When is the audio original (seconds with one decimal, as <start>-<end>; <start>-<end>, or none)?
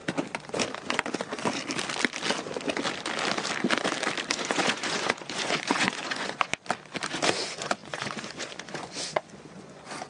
0.0-4.3; 6.5-7.1